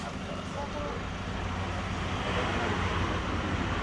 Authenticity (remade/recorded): recorded